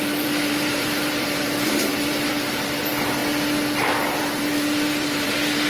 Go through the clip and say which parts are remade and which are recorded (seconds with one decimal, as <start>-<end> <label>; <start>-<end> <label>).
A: 0.0-3.2 remade; 3.2-4.2 recorded; 4.2-5.7 remade